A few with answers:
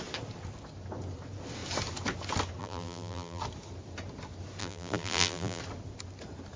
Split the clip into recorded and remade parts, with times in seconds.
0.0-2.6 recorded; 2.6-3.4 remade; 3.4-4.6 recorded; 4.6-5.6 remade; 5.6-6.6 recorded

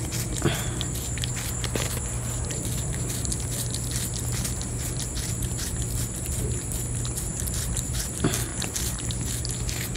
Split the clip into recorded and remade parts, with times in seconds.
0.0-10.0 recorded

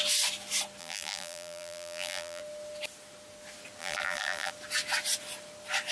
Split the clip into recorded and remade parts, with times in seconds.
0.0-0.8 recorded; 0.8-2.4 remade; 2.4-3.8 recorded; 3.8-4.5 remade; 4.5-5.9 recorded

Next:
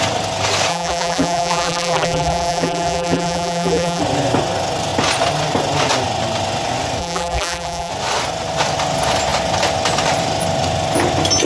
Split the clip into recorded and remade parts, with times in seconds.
0.0-0.7 recorded; 0.7-4.0 remade; 4.0-7.0 recorded; 7.0-7.9 remade; 7.9-11.5 recorded

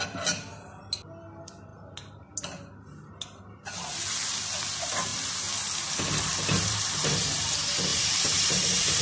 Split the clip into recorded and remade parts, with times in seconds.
0.0-7.9 recorded; 7.9-9.0 remade